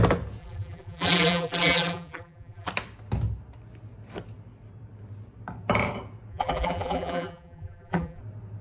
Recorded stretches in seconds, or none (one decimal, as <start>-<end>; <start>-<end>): 0.0-0.4; 2.7-6.3; 8.2-8.6